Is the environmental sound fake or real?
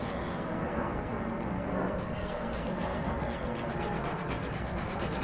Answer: fake